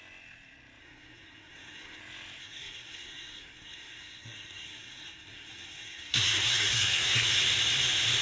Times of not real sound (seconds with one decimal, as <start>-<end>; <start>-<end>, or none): 0.8-2.0; 2.4-7.3